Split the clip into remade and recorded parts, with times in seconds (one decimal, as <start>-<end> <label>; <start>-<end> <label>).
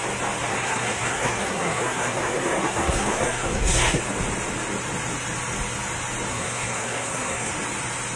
0.0-0.5 recorded; 0.5-4.0 remade; 4.0-6.3 recorded; 6.3-7.5 remade; 7.5-8.2 recorded